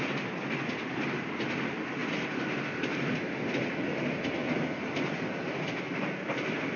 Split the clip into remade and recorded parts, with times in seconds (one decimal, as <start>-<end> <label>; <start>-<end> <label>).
0.0-6.8 recorded